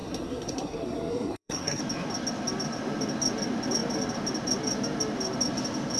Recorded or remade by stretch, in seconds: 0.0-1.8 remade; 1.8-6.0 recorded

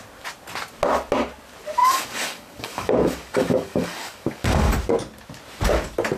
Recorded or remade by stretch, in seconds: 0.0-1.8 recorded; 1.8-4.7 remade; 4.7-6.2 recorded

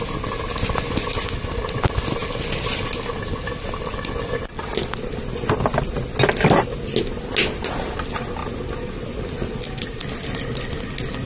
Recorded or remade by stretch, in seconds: 0.0-2.2 recorded; 2.2-5.9 remade; 5.9-11.3 recorded